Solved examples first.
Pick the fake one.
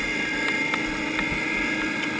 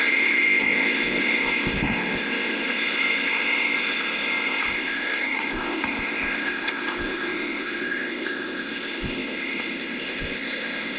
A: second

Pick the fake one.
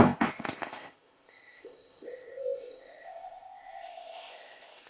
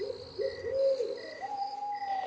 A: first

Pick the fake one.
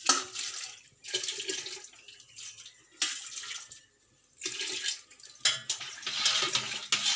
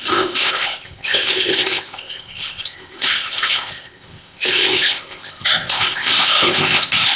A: second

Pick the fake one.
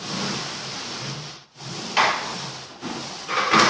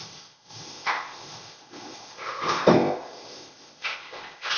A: second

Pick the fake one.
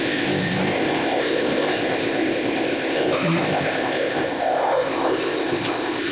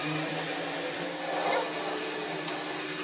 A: first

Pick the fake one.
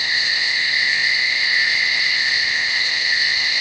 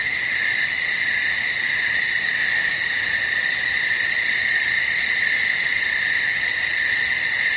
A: first